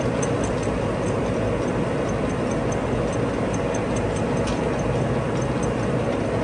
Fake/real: real